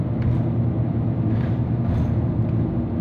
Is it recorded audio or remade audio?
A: recorded